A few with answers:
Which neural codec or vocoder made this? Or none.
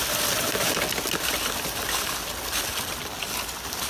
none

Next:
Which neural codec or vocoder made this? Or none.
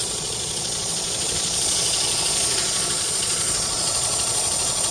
vocoder, Vocos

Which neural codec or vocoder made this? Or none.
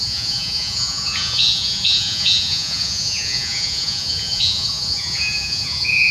vocoder, Vocos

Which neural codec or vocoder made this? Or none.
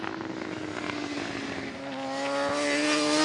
none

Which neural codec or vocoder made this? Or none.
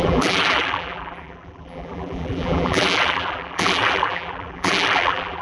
vocoder, BigVGAN v2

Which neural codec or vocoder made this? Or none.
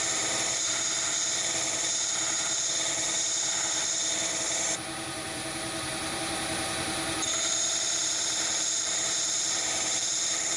vocoder, BigVGAN v2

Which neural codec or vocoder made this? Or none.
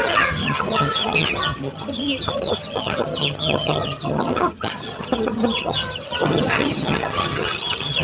vocoder, HiFi-GAN